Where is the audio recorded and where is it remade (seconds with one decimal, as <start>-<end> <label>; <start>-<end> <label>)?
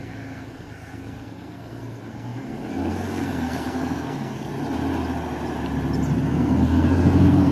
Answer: 0.0-4.5 remade; 4.5-6.2 recorded; 6.2-7.5 remade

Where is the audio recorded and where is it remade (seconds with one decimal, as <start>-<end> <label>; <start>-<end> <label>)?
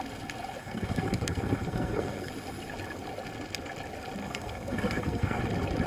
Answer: 0.0-0.6 recorded; 0.6-2.3 remade; 2.3-4.2 recorded; 4.2-5.4 remade; 5.4-5.9 recorded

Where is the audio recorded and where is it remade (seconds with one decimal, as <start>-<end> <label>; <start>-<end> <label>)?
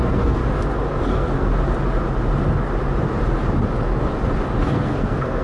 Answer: 0.0-0.4 remade; 0.4-1.0 recorded; 1.0-1.5 remade; 1.5-4.7 recorded; 4.7-5.4 remade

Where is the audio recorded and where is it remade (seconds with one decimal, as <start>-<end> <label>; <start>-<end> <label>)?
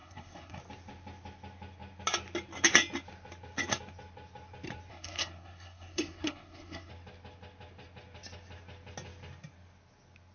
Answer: 0.0-0.6 remade; 0.6-4.9 recorded; 4.9-6.9 remade; 6.9-10.3 recorded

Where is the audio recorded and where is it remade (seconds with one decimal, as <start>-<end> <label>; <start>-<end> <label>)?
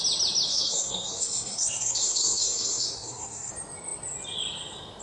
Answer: 0.0-0.5 recorded; 0.5-3.5 remade; 3.5-5.0 recorded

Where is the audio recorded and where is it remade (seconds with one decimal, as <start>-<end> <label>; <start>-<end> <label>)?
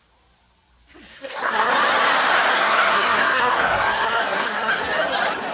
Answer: 0.0-1.1 recorded; 1.1-1.7 remade; 1.7-2.5 recorded; 2.5-4.7 remade; 4.7-5.5 recorded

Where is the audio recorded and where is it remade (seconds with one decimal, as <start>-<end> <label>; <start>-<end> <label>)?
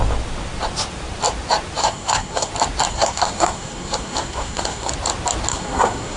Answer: 0.0-1.8 recorded; 1.8-2.5 remade; 2.5-2.9 recorded; 2.9-4.9 remade; 4.9-5.5 recorded; 5.5-6.2 remade